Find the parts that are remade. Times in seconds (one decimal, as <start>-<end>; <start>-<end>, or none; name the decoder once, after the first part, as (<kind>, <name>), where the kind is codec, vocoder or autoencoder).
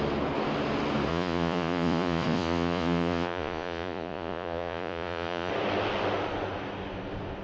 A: 1.1-5.5 (vocoder, Vocos)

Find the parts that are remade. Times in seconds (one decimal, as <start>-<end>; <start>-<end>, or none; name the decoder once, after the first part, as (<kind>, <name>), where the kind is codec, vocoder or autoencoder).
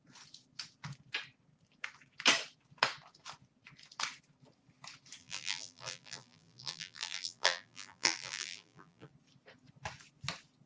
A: 5.2-9.1 (vocoder, BigVGAN v2)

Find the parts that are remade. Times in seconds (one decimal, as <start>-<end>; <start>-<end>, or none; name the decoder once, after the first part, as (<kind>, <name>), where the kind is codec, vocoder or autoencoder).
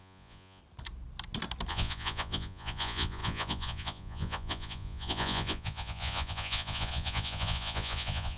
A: 0.0-0.6 (vocoder, Vocos); 1.7-8.4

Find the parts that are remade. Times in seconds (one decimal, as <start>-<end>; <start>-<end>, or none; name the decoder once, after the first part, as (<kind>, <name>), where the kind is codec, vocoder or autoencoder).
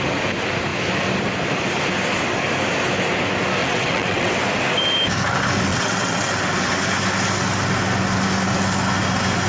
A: 3.6-4.3 (vocoder, WaveNeXt); 5.7-6.3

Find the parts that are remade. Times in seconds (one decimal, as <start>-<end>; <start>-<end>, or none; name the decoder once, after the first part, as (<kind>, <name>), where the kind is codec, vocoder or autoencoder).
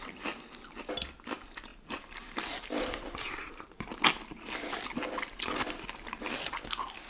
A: 1.7-3.9 (vocoder, BigVGAN v2)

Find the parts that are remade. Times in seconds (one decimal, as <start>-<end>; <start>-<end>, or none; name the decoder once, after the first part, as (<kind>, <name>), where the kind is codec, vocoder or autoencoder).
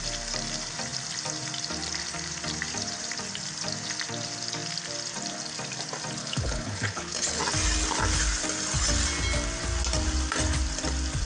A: 6.2-7.4 (codec, HILCodec)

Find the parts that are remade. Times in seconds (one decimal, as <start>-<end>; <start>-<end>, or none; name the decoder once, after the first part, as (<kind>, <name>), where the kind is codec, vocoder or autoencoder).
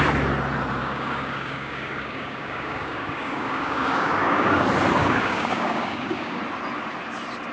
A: 0.8-4.6 (codec, DAC); 5.0-6.4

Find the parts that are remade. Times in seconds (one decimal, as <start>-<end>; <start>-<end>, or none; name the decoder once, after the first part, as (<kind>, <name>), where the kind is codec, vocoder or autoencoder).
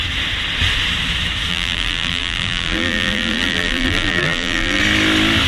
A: 1.5-4.8 (vocoder, BigVGAN v2)